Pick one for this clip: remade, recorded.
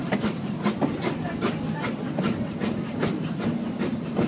recorded